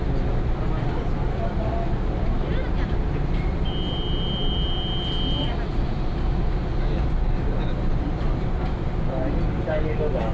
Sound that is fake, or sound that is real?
real